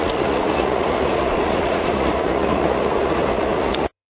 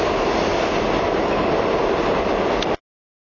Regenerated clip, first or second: first